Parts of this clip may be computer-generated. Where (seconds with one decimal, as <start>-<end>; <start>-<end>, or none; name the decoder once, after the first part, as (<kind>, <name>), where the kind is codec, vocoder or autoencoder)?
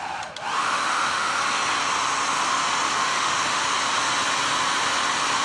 0.6-1.4 (autoencoder, DAC-VAE); 3.0-3.6